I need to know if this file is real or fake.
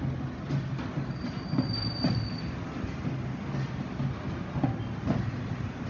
real